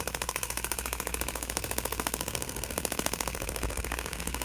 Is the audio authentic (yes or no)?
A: no